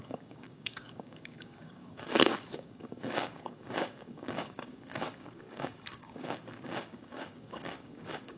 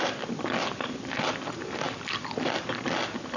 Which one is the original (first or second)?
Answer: second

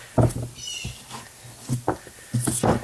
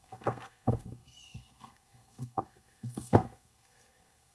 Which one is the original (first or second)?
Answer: first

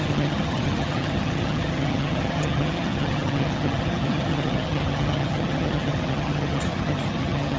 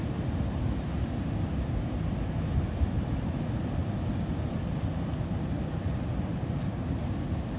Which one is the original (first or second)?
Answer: second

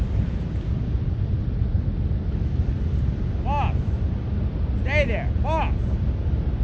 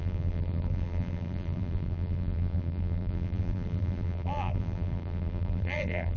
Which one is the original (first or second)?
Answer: first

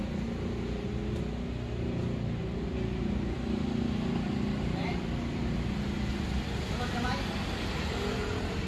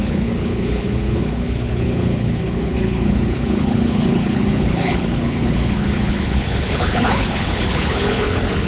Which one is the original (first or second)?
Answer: first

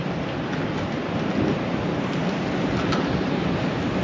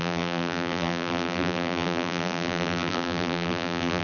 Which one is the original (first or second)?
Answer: first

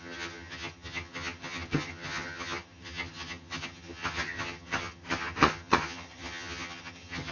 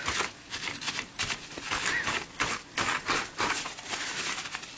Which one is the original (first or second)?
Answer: second